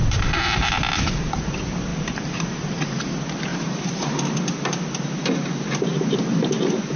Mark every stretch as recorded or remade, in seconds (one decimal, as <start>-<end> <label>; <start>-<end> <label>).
0.0-1.9 recorded; 1.9-3.1 remade; 3.1-3.5 recorded; 3.5-4.1 remade; 4.1-7.0 recorded